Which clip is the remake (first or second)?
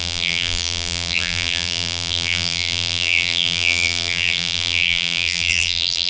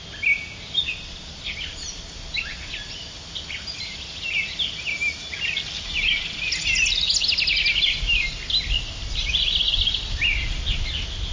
first